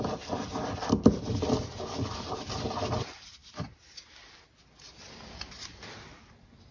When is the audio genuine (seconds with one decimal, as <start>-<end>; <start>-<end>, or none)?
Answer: 0.0-6.7